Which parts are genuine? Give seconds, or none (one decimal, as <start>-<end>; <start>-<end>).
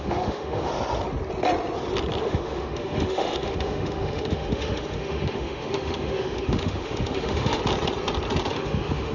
0.7-2.2; 7.6-8.5